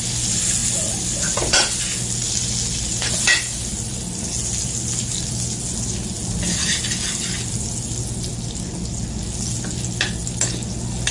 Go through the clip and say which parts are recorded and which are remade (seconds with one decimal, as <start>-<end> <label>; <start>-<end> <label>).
0.0-11.1 recorded